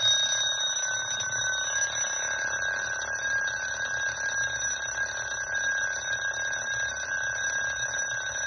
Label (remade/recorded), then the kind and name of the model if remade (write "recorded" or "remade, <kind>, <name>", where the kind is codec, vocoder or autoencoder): recorded